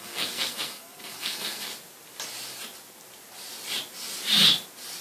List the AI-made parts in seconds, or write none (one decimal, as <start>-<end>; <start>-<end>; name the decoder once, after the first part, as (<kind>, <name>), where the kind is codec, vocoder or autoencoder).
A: 0.0-1.7 (codec, SNAC)